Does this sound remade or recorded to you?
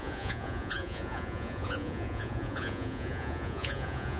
remade